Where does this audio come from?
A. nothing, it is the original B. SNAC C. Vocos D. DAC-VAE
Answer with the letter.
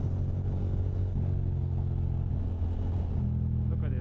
A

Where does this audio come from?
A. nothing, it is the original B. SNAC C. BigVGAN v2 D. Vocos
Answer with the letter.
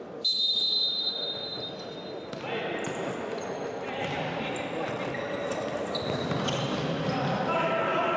A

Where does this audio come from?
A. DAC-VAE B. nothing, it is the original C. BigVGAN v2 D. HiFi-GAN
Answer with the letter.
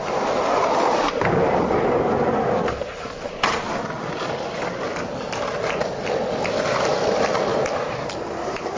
B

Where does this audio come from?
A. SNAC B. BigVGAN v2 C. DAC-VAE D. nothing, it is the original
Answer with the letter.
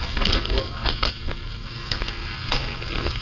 A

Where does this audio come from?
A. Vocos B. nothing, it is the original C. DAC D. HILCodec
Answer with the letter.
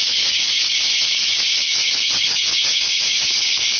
C